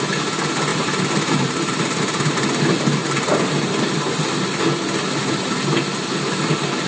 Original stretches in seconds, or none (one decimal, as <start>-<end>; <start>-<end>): 0.0-0.7; 2.6-3.0; 3.7-6.9